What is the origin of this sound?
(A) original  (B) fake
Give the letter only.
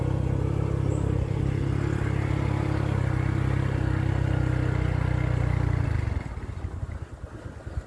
A